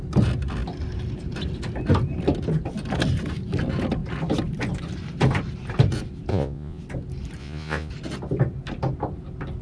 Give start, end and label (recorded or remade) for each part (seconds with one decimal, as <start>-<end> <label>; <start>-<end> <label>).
0.0-6.3 recorded; 6.3-6.8 remade; 6.8-7.4 recorded; 7.4-7.9 remade; 7.9-9.6 recorded